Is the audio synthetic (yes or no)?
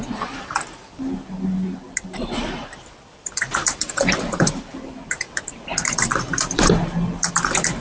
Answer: yes